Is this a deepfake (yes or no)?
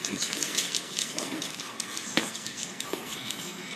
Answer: yes